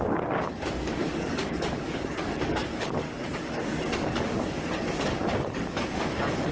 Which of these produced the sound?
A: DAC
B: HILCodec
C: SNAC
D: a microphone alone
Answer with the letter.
A